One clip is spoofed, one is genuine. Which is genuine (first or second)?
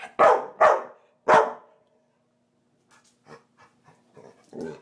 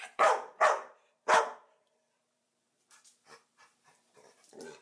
first